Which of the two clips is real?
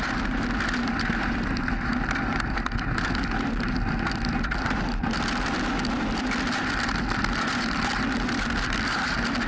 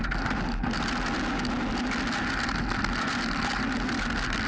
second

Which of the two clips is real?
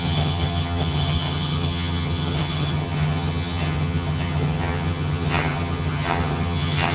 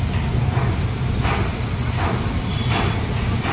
second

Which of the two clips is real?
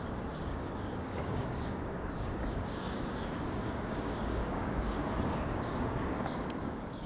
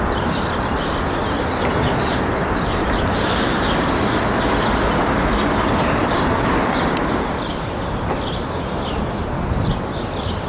second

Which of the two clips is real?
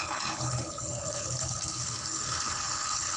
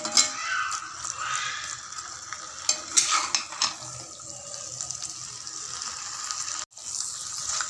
second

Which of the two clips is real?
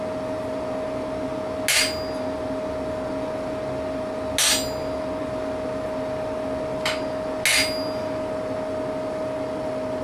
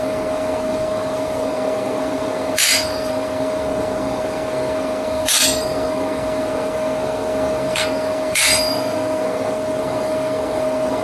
first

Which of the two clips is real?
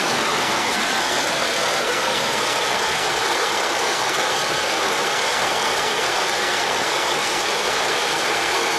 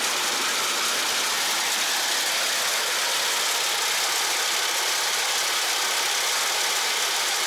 second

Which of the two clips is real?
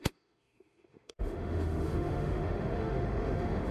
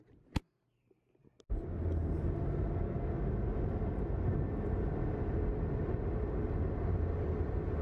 second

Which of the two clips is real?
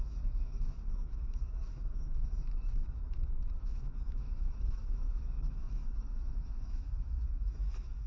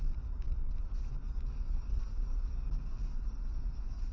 second